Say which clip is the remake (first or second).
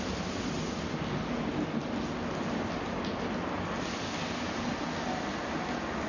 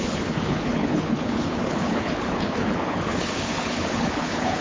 second